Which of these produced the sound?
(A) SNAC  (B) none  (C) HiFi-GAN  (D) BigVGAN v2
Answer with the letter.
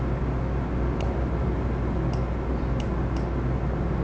B